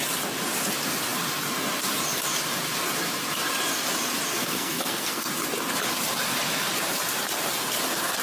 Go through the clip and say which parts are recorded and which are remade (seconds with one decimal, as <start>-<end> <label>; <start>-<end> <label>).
0.0-4.3 recorded; 4.3-5.3 remade; 5.3-8.2 recorded